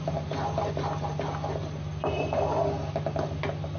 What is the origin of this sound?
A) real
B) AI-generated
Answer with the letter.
A